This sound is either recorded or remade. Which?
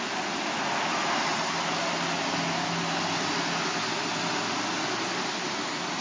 recorded